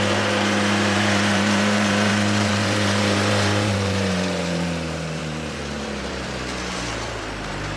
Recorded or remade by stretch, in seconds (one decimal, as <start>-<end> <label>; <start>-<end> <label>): 0.0-7.8 remade